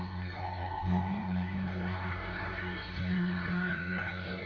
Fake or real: fake